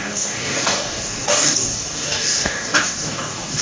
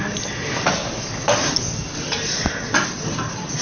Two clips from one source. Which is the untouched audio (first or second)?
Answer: second